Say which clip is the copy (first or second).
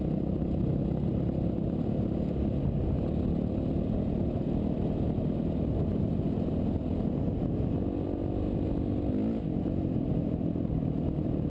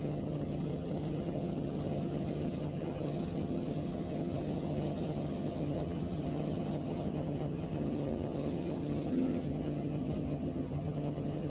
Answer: second